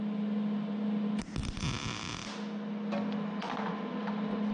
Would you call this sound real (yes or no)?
yes